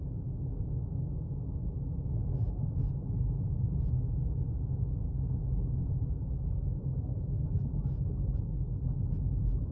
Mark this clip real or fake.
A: real